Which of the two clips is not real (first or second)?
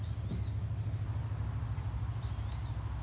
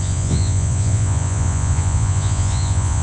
second